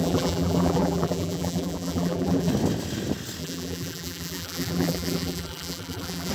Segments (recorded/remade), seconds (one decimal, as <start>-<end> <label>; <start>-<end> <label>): 0.0-2.5 remade; 2.5-3.4 recorded; 3.4-6.3 remade